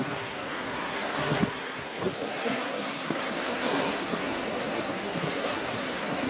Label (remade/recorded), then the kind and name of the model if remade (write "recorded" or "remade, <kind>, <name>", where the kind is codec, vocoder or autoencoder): remade, codec, SNAC